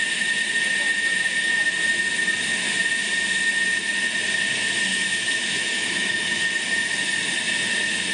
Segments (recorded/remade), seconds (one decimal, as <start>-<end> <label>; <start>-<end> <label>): 0.0-4.9 recorded; 4.9-6.5 remade; 6.5-8.1 recorded